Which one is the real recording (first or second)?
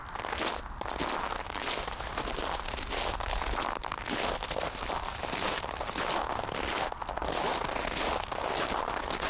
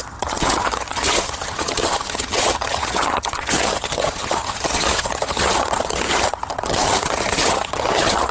first